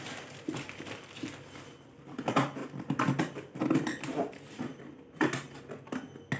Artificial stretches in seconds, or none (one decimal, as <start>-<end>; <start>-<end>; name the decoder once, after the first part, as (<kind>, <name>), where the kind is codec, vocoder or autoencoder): 2.6-4.6 (vocoder, BigVGAN v2)